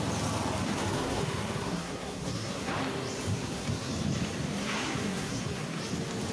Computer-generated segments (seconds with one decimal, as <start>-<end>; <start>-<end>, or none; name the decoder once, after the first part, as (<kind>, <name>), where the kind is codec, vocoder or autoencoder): 0.6-2.7 (codec, SNAC); 3.3-3.9; 4.6-5.8